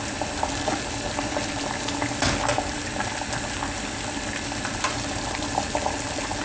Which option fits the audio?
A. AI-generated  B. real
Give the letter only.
B